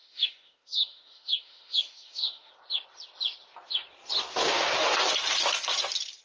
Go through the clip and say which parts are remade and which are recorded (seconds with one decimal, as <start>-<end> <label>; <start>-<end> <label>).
0.0-2.5 remade; 2.5-6.2 recorded